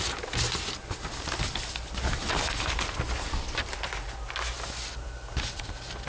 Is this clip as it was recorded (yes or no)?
yes